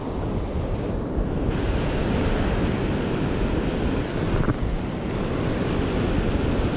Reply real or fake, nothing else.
real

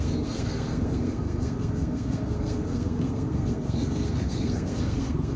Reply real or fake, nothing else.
fake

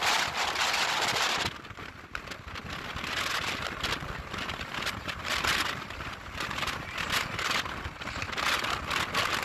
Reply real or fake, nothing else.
real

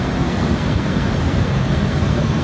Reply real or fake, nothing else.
fake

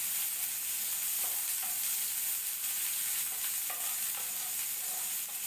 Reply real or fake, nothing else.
real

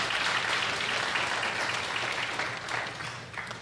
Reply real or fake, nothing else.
real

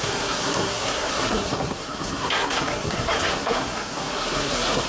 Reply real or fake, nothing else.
fake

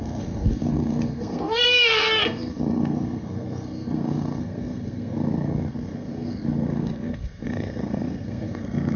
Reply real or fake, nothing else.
fake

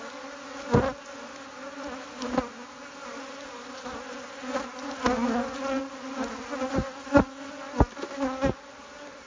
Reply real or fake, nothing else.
real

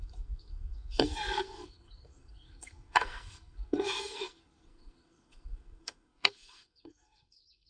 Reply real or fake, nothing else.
fake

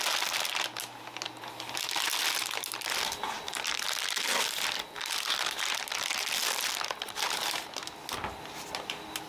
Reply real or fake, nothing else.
real